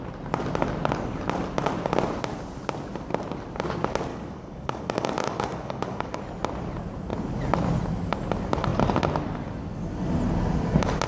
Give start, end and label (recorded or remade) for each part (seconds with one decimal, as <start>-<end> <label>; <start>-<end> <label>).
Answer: 0.0-4.1 recorded; 4.1-6.2 remade; 6.2-11.1 recorded